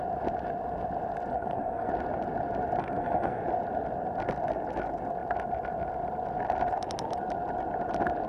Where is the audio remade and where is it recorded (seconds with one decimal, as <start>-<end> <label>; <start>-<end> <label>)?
0.0-1.3 recorded; 1.3-1.9 remade; 1.9-2.8 recorded; 2.8-3.4 remade; 3.4-8.3 recorded